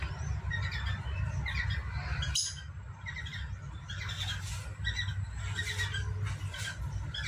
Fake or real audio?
real